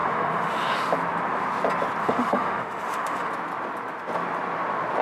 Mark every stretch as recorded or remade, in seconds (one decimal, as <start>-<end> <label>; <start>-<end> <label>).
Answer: 0.0-0.9 remade; 0.9-2.0 recorded; 2.0-3.3 remade; 3.3-5.0 recorded